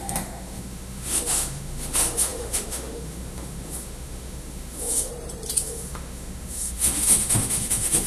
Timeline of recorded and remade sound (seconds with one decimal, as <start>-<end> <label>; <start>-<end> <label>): 0.0-5.1 remade; 5.1-5.6 recorded; 5.6-8.1 remade